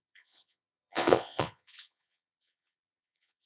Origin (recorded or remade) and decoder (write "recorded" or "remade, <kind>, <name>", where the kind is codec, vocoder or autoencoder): remade, vocoder, Vocos